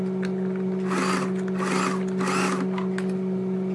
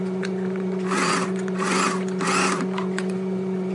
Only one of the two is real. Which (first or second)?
first